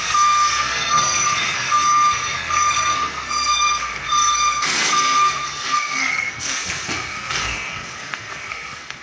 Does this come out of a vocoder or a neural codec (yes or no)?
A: yes